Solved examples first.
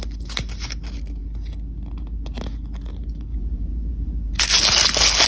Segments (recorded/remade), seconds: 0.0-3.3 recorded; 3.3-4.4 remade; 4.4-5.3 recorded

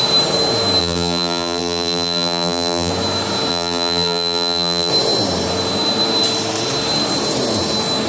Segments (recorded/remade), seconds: 0.0-0.8 recorded; 0.8-2.9 remade; 2.9-3.5 recorded; 3.5-4.9 remade; 4.9-8.1 recorded

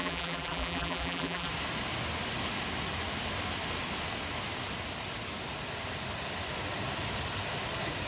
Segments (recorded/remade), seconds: 0.0-1.5 remade; 1.5-8.1 recorded

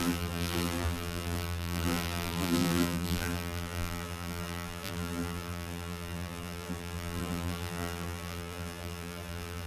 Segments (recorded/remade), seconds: 0.0-9.7 remade

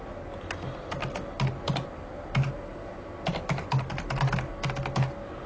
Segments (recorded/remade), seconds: 0.0-5.5 recorded

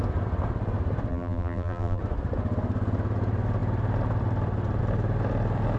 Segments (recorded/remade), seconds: 0.0-1.1 recorded; 1.1-2.0 remade; 2.0-5.8 recorded

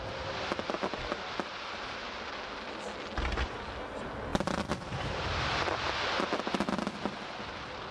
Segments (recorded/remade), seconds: 0.0-4.3 recorded; 4.3-5.9 remade; 5.9-7.9 recorded